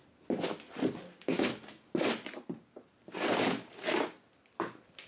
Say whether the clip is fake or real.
real